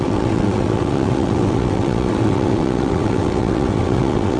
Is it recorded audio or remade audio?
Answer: remade